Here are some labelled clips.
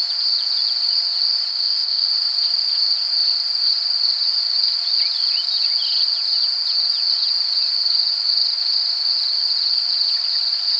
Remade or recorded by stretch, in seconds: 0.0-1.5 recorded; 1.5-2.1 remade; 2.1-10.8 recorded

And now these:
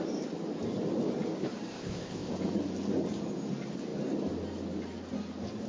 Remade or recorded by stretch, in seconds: 0.0-1.7 recorded; 1.7-2.3 remade; 2.3-5.7 recorded

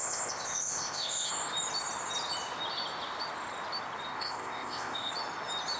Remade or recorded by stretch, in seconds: 0.0-1.3 remade; 1.3-4.1 recorded; 4.1-5.1 remade; 5.1-5.8 recorded